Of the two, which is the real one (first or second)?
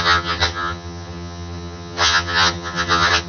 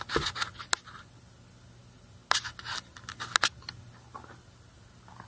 second